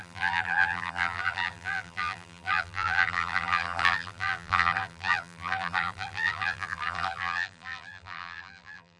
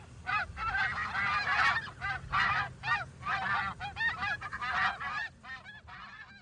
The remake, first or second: first